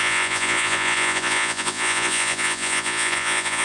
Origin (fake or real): fake